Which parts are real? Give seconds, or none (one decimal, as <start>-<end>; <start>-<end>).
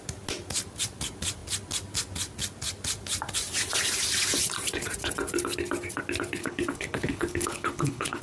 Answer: 0.0-6.4